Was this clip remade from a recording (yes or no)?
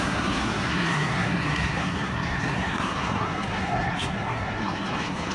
yes